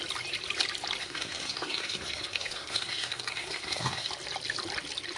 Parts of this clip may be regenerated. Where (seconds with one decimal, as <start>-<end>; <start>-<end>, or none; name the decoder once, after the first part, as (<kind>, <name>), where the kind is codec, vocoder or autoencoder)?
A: 1.0-4.1 (codec, SNAC)